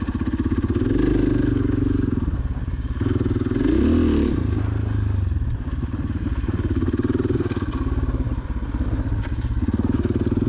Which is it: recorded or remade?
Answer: recorded